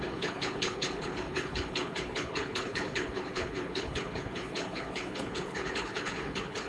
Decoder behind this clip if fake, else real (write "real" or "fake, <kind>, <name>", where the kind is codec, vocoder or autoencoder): fake, codec, HILCodec